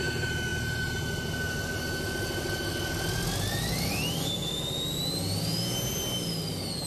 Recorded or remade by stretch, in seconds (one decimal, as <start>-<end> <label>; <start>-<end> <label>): 0.0-6.9 recorded